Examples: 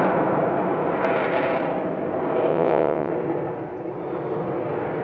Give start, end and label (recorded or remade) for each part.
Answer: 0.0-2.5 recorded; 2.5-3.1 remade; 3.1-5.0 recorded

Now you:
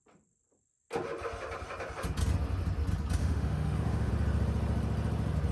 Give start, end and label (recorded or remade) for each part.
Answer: 0.0-3.2 recorded; 3.2-4.1 remade; 4.1-5.5 recorded

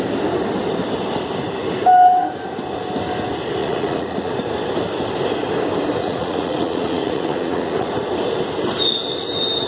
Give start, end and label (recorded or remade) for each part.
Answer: 0.0-3.6 recorded; 3.6-4.3 remade; 4.3-6.0 recorded; 6.0-7.9 remade; 7.9-9.7 recorded

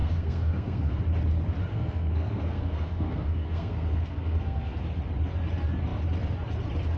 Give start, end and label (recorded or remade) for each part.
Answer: 0.0-1.0 remade; 1.0-1.7 recorded; 1.7-4.8 remade; 4.8-7.0 recorded

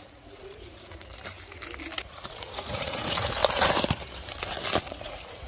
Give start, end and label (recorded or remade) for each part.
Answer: 0.0-1.1 remade; 1.1-2.1 recorded; 2.1-3.4 remade; 3.4-4.8 recorded; 4.8-5.5 remade

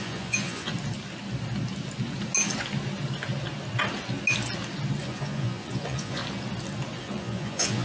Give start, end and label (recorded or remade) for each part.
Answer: 0.0-0.7 remade; 0.7-5.0 recorded; 5.0-6.2 remade; 6.2-7.0 recorded; 7.0-7.8 remade

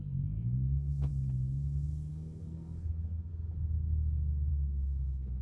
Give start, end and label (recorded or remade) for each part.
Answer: 0.0-1.1 remade; 1.1-2.1 recorded; 2.1-3.3 remade; 3.3-4.5 recorded; 4.5-5.4 remade